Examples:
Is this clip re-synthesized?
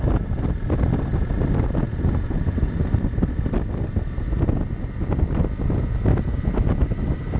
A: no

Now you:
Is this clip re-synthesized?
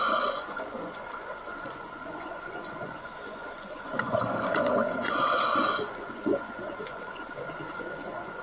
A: yes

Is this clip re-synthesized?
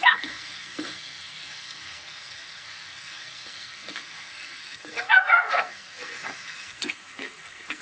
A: yes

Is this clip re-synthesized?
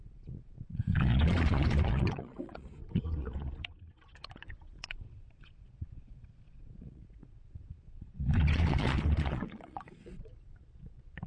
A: yes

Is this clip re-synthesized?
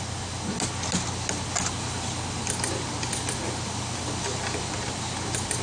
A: no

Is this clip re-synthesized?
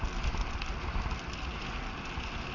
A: no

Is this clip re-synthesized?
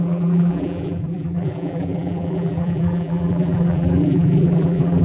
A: yes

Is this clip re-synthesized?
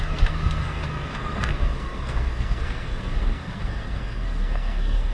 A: yes